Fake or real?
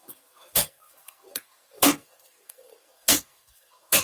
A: fake